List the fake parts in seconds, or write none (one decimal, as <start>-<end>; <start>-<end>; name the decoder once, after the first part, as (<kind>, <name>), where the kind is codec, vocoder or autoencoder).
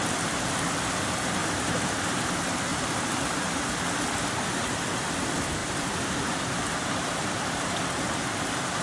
1.4-2.2 (vocoder, BigVGAN v2); 2.7-3.7; 5.6-7.7